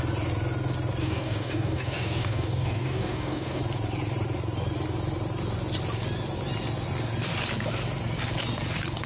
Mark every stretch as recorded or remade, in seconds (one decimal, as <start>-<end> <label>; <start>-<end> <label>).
0.0-1.0 recorded; 1.0-3.6 remade; 3.6-9.1 recorded

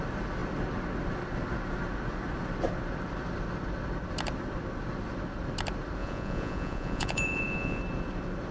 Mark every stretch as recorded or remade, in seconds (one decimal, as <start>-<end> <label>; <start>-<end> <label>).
0.0-6.0 recorded; 6.0-7.8 remade; 7.8-8.5 recorded